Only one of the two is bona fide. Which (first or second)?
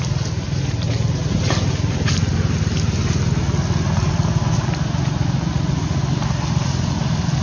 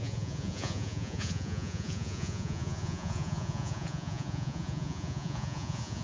first